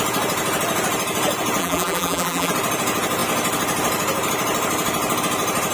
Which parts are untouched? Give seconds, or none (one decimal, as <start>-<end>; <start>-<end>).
0.0-1.6; 2.5-5.7